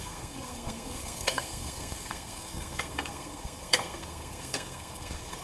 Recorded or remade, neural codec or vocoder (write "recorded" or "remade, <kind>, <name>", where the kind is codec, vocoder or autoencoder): remade, codec, SNAC